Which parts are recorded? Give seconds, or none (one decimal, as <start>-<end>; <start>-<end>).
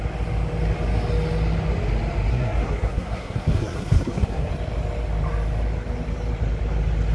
0.0-2.3; 4.5-7.1